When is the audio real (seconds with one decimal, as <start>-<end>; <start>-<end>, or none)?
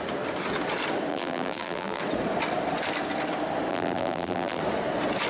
0.0-1.1; 2.0-3.7; 4.6-5.3